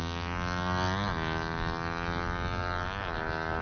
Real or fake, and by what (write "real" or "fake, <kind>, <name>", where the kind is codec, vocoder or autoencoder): real